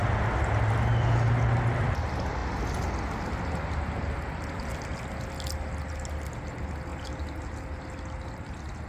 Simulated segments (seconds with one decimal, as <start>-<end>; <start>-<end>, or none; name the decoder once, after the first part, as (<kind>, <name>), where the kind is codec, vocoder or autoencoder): none